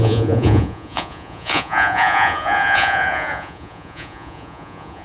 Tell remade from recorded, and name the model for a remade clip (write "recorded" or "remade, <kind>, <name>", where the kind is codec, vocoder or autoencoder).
remade, vocoder, Vocos